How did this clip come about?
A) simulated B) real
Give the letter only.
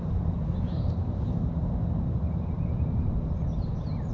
B